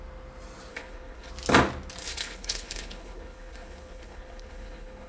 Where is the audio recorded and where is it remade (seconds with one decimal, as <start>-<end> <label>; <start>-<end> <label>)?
0.0-0.7 recorded; 0.7-1.3 remade; 1.3-2.0 recorded; 2.0-5.1 remade